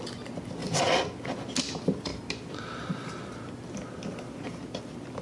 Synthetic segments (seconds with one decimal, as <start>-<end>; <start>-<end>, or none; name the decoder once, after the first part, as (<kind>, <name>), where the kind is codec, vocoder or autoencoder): 2.1-5.2 (vocoder, BigVGAN v2)